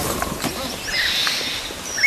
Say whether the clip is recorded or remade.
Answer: recorded